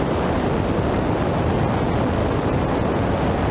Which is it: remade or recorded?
recorded